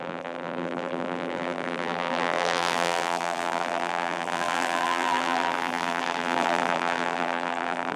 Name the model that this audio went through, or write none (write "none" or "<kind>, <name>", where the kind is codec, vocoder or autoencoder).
vocoder, BigVGAN v2